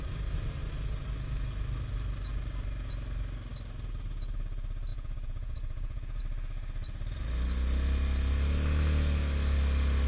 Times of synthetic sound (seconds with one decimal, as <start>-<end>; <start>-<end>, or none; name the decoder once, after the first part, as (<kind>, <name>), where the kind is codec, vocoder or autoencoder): 4.9-6.2 (vocoder, Vocos)